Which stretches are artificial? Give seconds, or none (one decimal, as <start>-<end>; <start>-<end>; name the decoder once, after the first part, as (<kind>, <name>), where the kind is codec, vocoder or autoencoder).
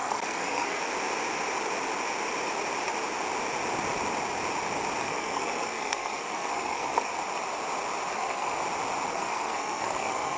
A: 0.0-0.8 (codec, SNAC); 5.0-7.1; 8.1-8.6; 9.1-10.4